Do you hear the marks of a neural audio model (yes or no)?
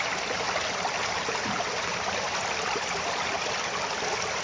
no